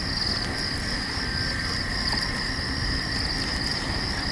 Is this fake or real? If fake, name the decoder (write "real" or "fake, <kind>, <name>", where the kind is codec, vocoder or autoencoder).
real